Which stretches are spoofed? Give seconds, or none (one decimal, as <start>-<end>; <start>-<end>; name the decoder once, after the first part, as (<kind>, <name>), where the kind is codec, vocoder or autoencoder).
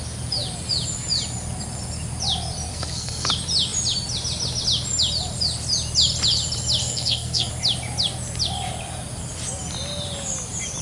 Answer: 2.7-3.3 (codec, SNAC); 6.8-7.5